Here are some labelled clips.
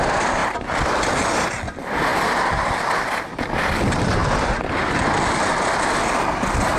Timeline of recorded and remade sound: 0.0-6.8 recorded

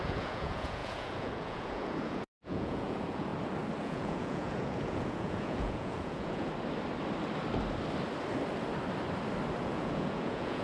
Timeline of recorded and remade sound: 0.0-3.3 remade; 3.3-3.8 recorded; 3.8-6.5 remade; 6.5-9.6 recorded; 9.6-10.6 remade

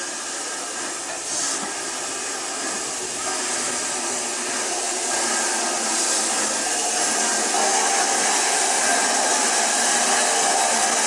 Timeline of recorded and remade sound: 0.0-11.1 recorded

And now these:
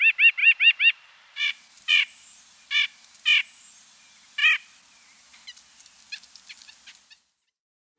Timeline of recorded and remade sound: 0.0-0.4 recorded; 0.4-2.4 remade; 2.4-8.0 recorded

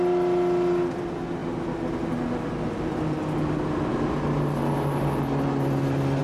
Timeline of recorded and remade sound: 0.0-6.2 recorded

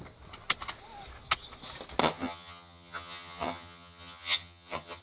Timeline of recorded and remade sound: 0.0-2.0 recorded; 2.0-5.0 remade